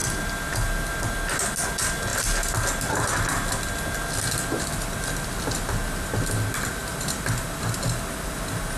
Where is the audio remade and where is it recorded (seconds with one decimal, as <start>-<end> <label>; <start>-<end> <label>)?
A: 0.0-8.8 recorded